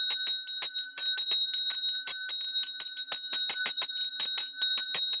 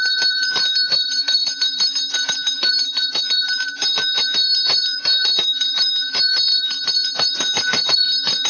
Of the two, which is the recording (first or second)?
first